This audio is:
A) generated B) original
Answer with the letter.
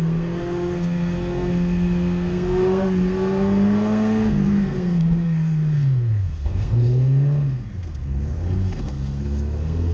A